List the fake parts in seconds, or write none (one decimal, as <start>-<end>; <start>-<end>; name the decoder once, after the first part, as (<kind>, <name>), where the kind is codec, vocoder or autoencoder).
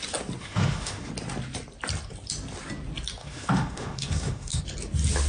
0.4-1.1 (autoencoder, DAC-VAE); 3.2-4.6